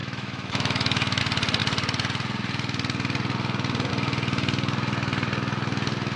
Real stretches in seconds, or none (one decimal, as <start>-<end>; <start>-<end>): 1.2-6.2